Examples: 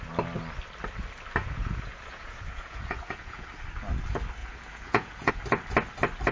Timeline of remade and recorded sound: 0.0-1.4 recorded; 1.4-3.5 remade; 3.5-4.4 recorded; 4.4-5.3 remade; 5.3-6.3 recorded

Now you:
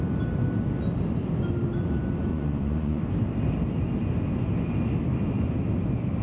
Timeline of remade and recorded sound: 0.0-2.3 recorded; 2.3-3.0 remade; 3.0-6.2 recorded

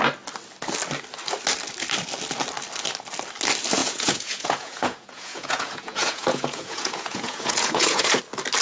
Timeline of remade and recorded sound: 0.0-3.8 recorded; 3.8-8.2 remade; 8.2-8.6 recorded

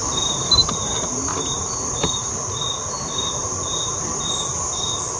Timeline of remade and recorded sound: 0.0-1.3 recorded; 1.3-2.3 remade; 2.3-5.2 recorded